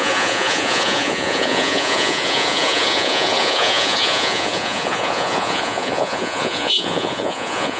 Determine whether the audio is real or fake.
fake